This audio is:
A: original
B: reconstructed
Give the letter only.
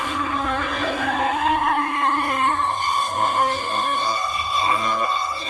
B